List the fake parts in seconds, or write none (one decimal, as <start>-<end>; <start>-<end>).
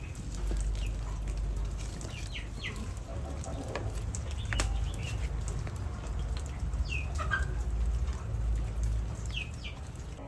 none